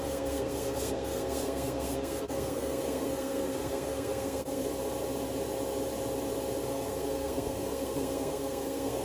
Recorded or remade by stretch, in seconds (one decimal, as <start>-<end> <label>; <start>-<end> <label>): 0.0-4.7 remade; 4.7-6.7 recorded; 6.7-9.0 remade